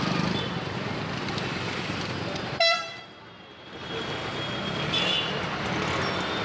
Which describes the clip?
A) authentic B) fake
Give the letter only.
A